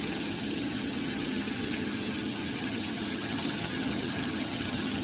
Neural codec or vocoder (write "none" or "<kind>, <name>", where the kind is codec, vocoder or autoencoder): vocoder, HiFi-GAN